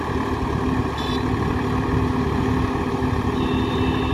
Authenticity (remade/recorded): recorded